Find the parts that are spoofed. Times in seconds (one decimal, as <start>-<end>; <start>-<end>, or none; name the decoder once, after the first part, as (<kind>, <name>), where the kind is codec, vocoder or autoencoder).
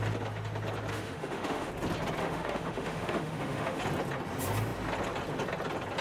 0.9-1.7 (autoencoder, DAC-VAE); 2.2-3.8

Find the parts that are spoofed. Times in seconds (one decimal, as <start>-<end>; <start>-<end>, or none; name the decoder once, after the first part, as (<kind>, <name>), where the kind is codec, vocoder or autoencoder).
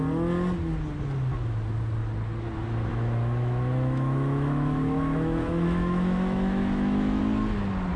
2.9-7.2 (autoencoder, DAC-VAE)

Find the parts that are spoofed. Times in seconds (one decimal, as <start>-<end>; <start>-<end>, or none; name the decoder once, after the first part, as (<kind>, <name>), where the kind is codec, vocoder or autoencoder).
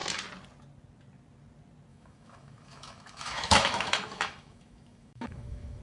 1.9-5.8 (autoencoder, DAC-VAE)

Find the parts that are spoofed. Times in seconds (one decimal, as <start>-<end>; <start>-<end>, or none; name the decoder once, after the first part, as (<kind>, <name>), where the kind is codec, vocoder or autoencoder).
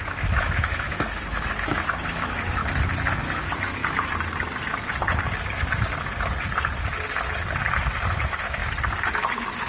0.0-2.6 (autoencoder, DAC-VAE); 3.2-3.8; 8.2-8.6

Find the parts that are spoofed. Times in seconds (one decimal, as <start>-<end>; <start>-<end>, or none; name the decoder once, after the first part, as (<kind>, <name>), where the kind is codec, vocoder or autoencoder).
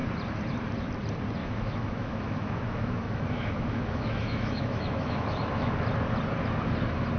1.4-5.7 (autoencoder, DAC-VAE)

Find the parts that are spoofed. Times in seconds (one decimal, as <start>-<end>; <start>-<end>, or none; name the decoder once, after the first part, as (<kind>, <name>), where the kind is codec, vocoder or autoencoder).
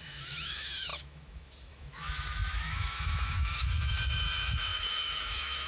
0.0-5.7 (autoencoder, DAC-VAE)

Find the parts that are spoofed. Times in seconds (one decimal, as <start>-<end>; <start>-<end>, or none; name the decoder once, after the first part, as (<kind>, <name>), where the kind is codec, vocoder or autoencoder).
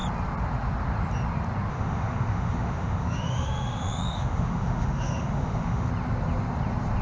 1.7-5.9 (autoencoder, DAC-VAE)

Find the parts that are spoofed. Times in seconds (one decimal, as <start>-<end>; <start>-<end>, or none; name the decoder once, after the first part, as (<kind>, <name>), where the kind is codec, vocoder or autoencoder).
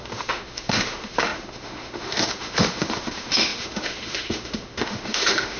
0.0-5.6 (autoencoder, DAC-VAE)